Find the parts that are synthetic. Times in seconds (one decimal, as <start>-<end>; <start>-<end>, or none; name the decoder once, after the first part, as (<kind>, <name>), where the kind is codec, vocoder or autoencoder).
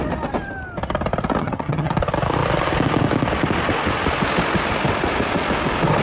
1.4-1.9 (vocoder, HiFi-GAN)